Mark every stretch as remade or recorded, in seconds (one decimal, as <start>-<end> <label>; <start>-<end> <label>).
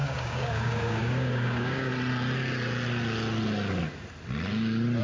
0.0-1.9 remade; 1.9-5.0 recorded